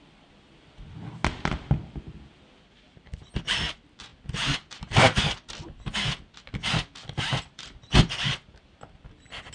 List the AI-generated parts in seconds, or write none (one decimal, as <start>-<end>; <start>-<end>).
0.0-1.2; 2.3-4.1; 4.7-9.5